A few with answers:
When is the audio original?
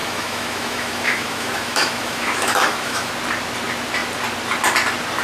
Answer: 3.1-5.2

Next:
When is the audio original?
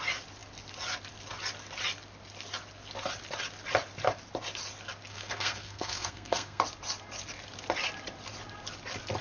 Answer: 0.0-5.1; 6.6-9.2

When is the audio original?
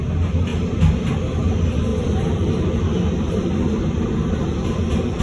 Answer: 0.0-1.9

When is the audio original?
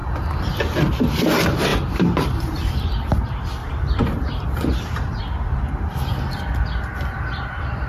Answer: 0.0-1.7; 2.7-3.6; 5.2-7.9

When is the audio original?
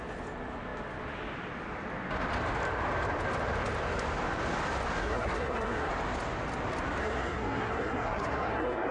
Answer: 0.0-5.0; 5.9-7.0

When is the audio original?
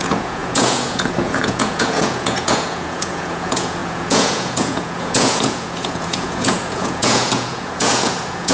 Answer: none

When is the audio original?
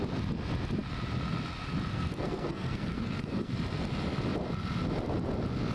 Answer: 0.0-1.9; 3.5-5.7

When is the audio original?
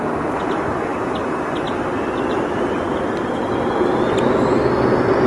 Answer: 0.0-5.3